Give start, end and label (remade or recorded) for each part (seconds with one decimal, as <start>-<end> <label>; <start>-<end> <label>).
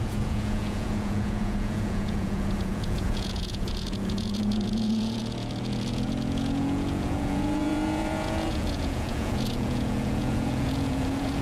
0.0-11.4 remade